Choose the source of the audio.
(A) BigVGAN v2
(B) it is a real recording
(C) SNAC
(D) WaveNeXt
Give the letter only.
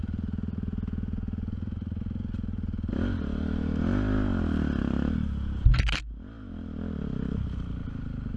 B